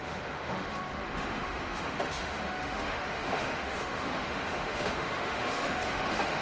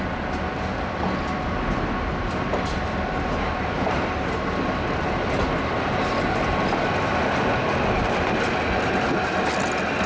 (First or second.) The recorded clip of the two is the second